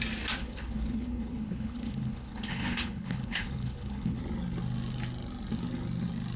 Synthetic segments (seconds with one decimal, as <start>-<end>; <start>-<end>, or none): 0.4-4.2